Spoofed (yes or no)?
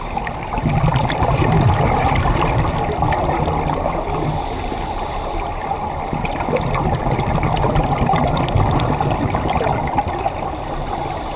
no